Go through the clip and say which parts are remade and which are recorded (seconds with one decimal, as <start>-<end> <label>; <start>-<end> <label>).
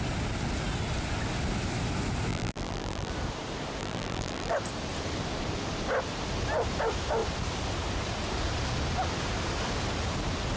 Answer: 0.0-2.3 recorded; 2.3-3.1 remade; 3.1-3.8 recorded; 3.8-4.5 remade; 4.5-10.6 recorded